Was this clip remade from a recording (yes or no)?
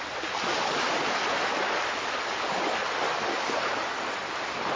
no